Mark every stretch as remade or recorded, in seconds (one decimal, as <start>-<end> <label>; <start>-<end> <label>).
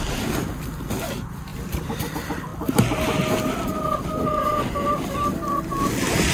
0.0-2.5 remade; 2.5-5.6 recorded; 5.6-6.3 remade